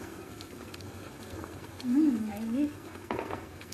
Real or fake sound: fake